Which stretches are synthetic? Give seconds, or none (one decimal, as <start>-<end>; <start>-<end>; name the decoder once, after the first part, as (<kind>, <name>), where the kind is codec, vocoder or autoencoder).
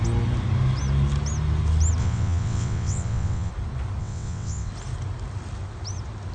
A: 2.0-3.5 (vocoder, WaveNeXt); 4.0-4.7